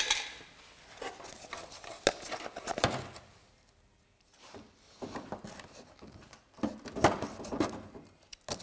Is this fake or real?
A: real